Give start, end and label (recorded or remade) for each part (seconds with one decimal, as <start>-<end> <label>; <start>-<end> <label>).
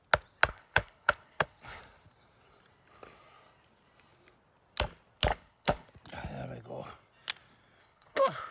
0.0-0.5 recorded; 0.5-1.8 remade; 1.8-5.3 recorded; 5.3-5.9 remade; 5.9-7.8 recorded; 7.8-8.5 remade